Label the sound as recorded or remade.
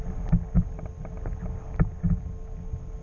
recorded